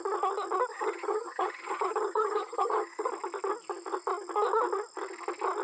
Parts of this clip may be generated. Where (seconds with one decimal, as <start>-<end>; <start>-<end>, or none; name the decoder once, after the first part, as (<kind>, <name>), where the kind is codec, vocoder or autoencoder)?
0.7-3.1 (vocoder, HiFi-GAN)